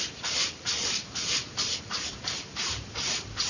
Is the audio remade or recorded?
remade